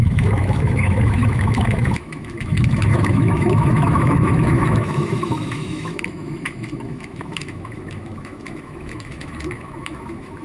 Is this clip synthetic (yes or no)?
yes